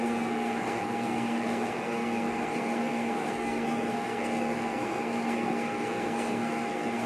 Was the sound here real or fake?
fake